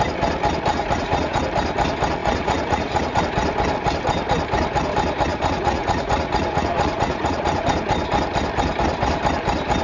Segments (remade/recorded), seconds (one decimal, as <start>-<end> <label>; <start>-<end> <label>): 0.0-0.7 recorded; 0.7-1.4 remade; 1.4-2.2 recorded; 2.2-3.2 remade; 3.2-5.3 recorded; 5.3-7.6 remade; 7.6-9.8 recorded